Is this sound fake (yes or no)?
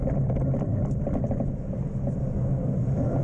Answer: no